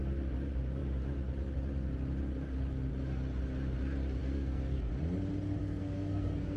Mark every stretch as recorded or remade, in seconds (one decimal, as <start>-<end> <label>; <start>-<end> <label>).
0.0-4.2 recorded; 4.2-4.9 remade; 4.9-5.6 recorded; 5.6-6.6 remade